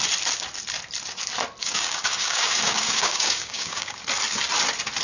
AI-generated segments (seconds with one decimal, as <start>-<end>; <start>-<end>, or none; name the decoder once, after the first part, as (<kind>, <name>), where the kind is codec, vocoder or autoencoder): 1.6-4.0 (codec, DAC)